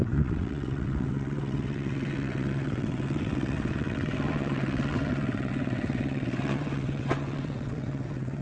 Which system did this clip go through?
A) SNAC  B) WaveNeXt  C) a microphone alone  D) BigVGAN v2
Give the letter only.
B